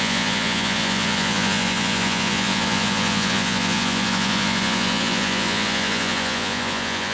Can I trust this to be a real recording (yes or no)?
no